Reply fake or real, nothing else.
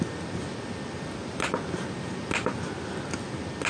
real